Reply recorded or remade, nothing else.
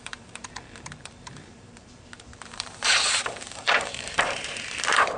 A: remade